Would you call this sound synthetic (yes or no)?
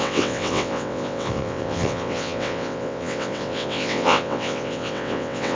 yes